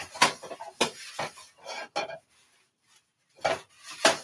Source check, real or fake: real